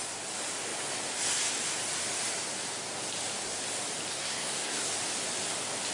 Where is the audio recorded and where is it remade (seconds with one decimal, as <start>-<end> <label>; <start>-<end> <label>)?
0.0-4.1 recorded; 4.1-4.9 remade; 4.9-5.9 recorded